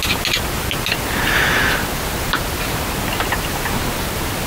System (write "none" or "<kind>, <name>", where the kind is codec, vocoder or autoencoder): none